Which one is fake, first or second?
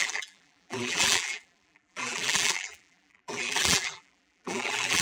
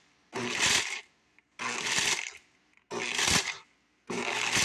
first